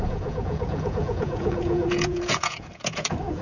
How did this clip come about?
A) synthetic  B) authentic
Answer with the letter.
A